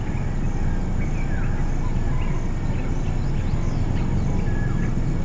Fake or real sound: real